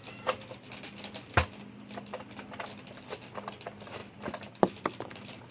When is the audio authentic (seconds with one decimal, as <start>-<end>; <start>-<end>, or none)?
0.0-4.0; 4.5-5.5